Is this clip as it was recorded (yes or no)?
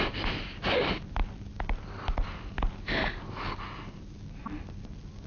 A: yes